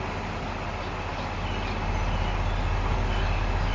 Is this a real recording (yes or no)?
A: yes